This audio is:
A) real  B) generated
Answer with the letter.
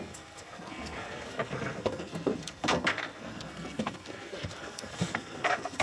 B